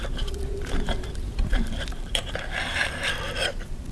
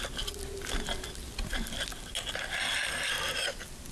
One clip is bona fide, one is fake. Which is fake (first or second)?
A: first